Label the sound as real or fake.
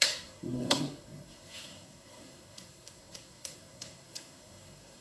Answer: fake